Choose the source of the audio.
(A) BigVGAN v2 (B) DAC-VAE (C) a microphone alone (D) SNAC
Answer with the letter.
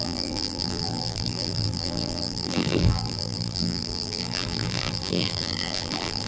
A